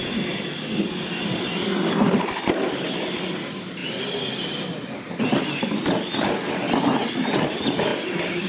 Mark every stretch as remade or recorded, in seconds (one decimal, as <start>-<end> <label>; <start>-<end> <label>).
0.0-8.5 recorded